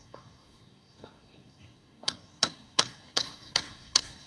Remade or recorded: remade